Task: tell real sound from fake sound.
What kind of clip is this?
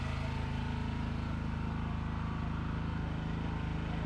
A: real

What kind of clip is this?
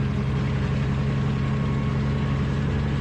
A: real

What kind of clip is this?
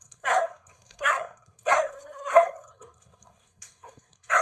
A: fake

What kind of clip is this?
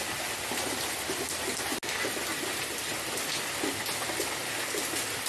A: real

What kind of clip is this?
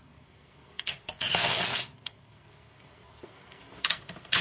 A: fake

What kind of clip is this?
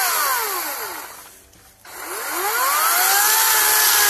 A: real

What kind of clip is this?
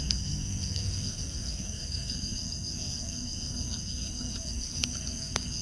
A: fake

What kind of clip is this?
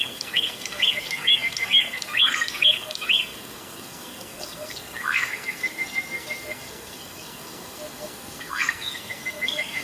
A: fake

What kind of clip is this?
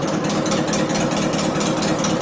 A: real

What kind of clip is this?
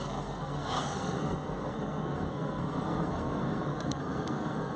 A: fake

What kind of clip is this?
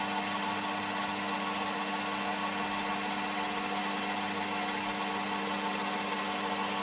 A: real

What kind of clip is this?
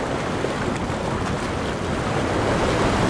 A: real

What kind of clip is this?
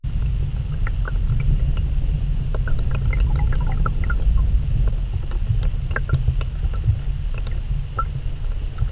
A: real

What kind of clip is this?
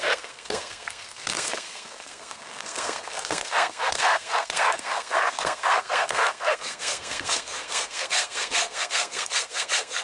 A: fake